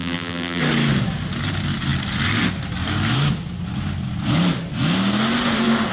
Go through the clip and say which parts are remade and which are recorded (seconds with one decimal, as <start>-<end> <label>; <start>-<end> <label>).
0.0-0.6 remade; 0.6-5.9 recorded